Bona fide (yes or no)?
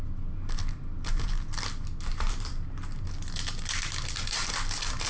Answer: yes